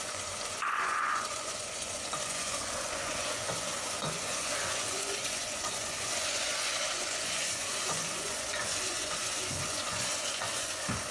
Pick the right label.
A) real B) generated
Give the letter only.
B